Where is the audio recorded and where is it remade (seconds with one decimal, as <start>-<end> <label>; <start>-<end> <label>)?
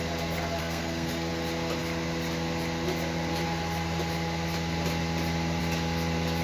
0.0-0.6 recorded; 0.6-1.3 remade; 1.3-6.4 recorded